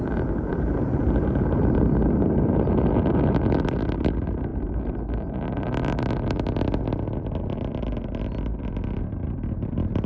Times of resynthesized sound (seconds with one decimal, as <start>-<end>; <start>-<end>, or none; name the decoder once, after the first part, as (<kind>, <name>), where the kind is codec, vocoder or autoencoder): 0.5-1.6 (vocoder, BigVGAN v2); 4.5-5.4